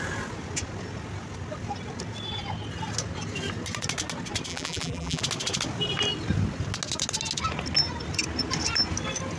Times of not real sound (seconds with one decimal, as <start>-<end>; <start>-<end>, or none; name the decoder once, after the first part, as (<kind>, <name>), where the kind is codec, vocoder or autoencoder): 4.5-5.2 (vocoder, BigVGAN v2)